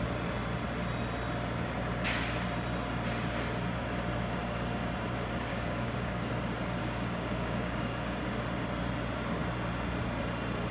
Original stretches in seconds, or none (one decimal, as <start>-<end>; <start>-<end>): 0.0-5.5; 6.3-6.8; 8.2-10.7